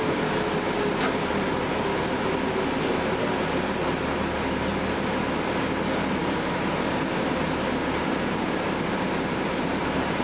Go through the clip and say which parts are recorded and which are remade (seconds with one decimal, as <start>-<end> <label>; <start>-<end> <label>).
0.0-7.8 recorded; 7.8-10.2 remade